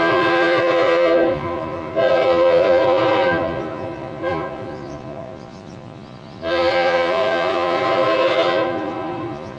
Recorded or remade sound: remade